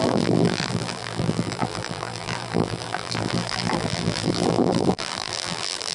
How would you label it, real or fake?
fake